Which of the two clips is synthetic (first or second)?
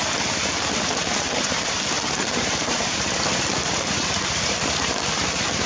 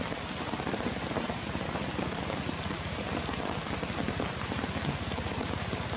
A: first